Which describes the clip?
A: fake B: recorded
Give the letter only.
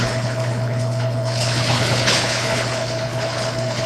A